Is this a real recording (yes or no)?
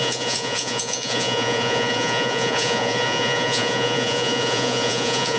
no